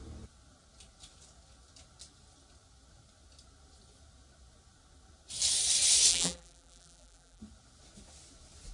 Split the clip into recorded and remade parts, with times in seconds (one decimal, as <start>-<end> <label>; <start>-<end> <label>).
0.0-6.1 recorded; 6.1-7.4 remade; 7.4-8.7 recorded